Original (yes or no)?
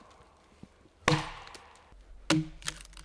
yes